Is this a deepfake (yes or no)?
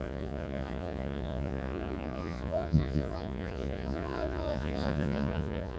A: yes